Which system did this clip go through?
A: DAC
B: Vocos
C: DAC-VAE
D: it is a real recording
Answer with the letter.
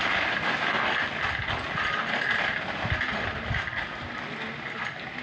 D